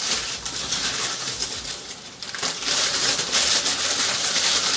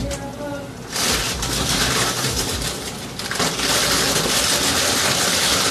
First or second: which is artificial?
first